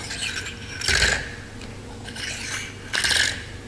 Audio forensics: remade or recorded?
recorded